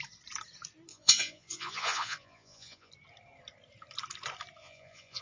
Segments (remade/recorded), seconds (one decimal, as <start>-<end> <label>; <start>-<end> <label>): 0.0-0.9 recorded; 0.9-2.9 remade; 2.9-4.6 recorded; 4.6-5.2 remade